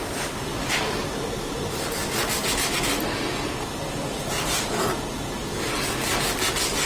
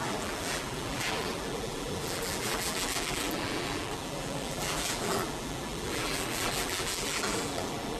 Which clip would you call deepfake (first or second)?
second